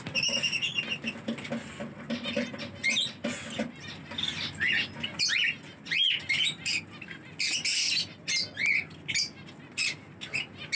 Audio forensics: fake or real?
real